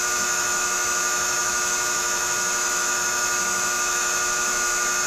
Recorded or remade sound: remade